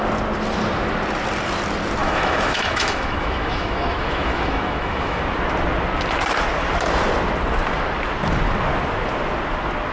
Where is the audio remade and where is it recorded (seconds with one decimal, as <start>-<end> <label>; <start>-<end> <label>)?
0.0-2.0 recorded; 2.0-5.2 remade; 5.2-9.9 recorded